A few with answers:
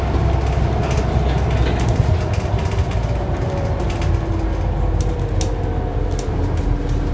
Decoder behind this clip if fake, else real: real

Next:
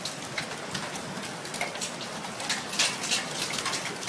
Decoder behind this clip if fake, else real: real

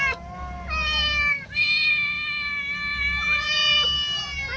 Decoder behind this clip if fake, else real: real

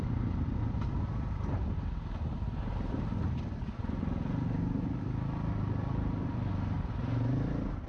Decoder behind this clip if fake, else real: real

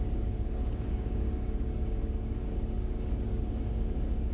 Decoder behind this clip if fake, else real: fake, codec, DAC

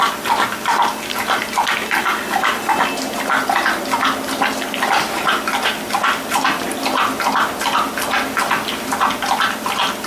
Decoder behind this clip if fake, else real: real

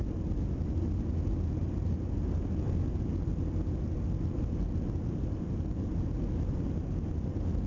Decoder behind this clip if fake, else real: real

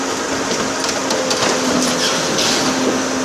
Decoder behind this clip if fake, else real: real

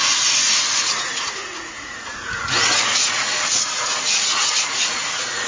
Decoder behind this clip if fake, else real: fake, vocoder, Vocos